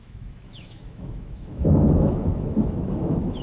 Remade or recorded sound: remade